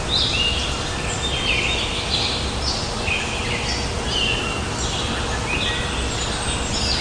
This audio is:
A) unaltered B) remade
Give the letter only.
A